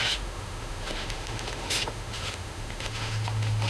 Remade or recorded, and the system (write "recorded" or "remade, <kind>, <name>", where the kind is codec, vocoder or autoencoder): remade, autoencoder, DAC-VAE